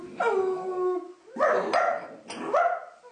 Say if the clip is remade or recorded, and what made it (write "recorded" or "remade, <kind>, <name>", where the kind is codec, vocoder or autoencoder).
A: recorded